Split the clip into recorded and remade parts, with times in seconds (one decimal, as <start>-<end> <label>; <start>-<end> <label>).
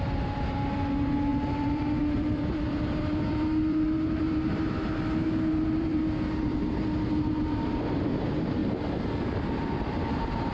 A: 0.0-8.6 remade; 8.6-9.8 recorded; 9.8-10.5 remade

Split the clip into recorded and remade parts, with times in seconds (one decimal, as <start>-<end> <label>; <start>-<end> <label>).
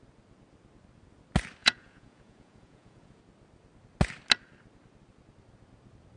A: 0.0-1.6 recorded; 1.6-3.2 remade; 3.2-6.2 recorded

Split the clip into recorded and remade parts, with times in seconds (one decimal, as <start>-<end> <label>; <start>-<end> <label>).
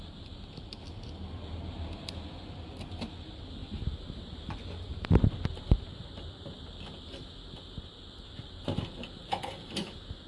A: 0.0-3.6 recorded; 3.6-5.3 remade; 5.3-10.3 recorded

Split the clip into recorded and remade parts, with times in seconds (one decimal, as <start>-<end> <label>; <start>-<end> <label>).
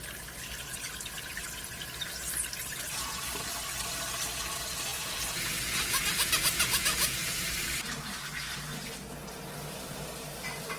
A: 0.0-2.7 recorded; 2.7-3.3 remade; 3.3-4.9 recorded; 4.9-7.5 remade; 7.5-10.8 recorded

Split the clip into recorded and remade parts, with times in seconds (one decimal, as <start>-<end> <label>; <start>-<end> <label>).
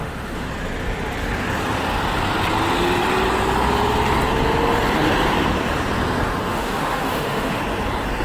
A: 0.0-0.5 remade; 0.5-6.5 recorded; 6.5-7.6 remade; 7.6-8.2 recorded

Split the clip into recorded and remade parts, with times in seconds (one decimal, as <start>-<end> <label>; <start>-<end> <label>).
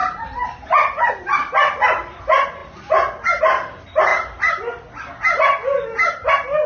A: 0.0-1.1 remade; 1.1-6.7 recorded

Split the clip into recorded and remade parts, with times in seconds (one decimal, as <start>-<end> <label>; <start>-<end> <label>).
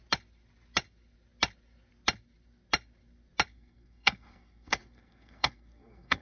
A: 0.0-3.5 recorded; 3.5-6.2 remade